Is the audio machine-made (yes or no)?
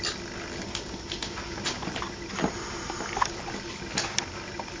no